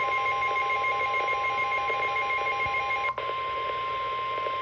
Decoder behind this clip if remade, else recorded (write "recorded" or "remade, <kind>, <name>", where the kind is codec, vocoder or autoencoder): recorded